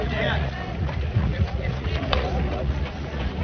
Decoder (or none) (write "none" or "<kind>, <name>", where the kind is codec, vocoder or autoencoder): vocoder, Vocos